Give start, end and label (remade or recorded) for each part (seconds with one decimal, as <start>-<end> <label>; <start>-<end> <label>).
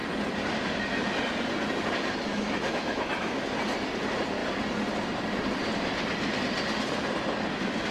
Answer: 0.0-2.3 recorded; 2.3-3.4 remade; 3.4-7.9 recorded